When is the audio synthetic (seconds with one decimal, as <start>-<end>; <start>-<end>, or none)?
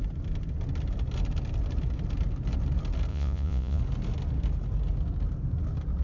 3.1-3.8